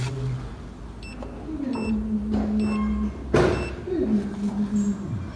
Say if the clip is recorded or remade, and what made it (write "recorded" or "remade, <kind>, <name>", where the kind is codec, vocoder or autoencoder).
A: recorded